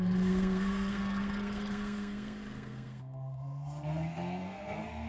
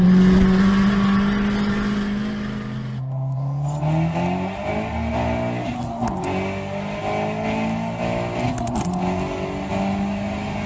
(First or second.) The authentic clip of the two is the second